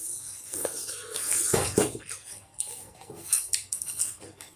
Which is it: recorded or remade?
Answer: remade